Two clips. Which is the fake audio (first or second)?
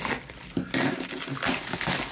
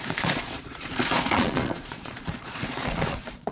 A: second